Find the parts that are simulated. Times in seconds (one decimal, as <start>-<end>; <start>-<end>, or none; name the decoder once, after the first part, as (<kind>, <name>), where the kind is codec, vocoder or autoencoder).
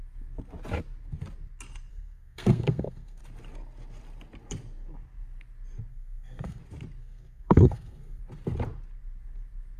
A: 1.9-3.2 (codec, SNAC); 5.9-6.6; 7.0-8.2